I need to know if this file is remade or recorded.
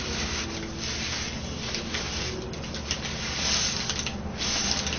recorded